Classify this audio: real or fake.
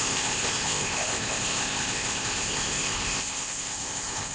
fake